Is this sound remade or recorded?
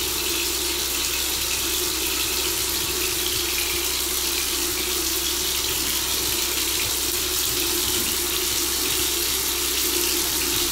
recorded